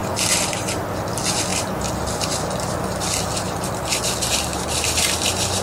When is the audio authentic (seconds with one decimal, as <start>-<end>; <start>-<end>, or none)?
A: 0.8-4.5; 5.0-5.6